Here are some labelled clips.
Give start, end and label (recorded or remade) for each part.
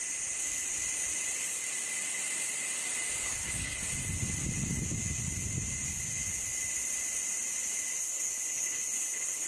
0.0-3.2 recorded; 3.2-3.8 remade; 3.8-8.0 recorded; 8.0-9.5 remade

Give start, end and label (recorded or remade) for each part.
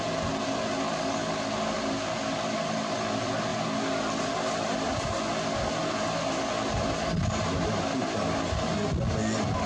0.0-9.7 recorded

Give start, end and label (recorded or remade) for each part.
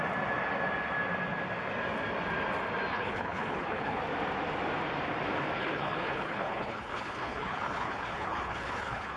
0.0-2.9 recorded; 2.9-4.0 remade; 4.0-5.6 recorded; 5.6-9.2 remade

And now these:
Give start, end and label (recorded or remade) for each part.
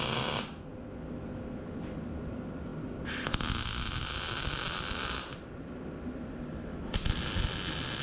0.0-8.0 recorded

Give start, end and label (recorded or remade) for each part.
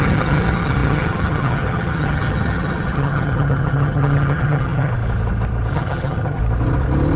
0.0-4.9 remade; 4.9-5.7 recorded; 5.7-6.4 remade; 6.4-7.2 recorded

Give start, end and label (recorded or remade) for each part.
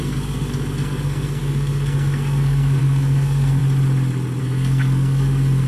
0.0-3.6 remade; 3.6-4.4 recorded; 4.4-5.7 remade